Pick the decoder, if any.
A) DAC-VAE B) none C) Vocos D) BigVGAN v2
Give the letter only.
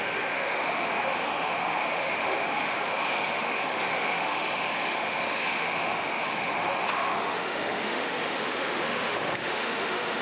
A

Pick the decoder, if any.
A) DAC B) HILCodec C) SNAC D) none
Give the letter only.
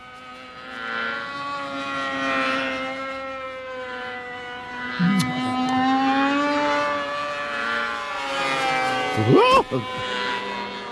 D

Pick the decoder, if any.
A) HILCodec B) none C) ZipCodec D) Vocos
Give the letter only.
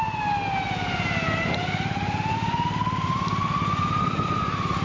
B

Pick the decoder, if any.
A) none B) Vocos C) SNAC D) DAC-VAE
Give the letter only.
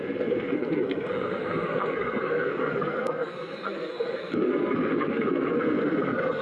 C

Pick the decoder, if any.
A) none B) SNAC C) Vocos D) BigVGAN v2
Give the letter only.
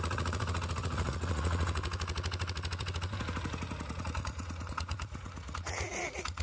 C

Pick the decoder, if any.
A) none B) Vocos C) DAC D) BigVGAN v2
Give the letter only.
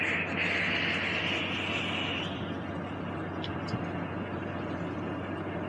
A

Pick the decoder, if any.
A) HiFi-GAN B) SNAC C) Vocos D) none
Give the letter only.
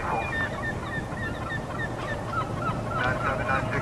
D